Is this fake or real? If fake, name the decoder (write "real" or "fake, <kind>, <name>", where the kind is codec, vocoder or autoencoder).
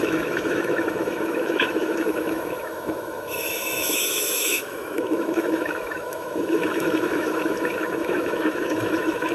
fake, autoencoder, DAC-VAE